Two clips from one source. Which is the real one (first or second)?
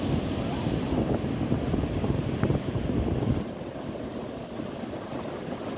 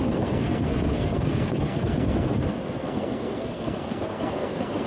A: first